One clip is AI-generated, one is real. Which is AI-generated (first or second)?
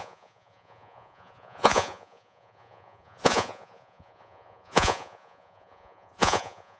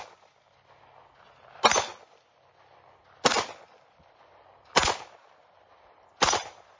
first